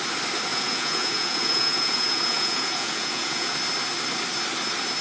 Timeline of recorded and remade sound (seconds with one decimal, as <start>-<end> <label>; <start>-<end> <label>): 0.0-0.5 recorded; 0.5-3.5 remade; 3.5-5.0 recorded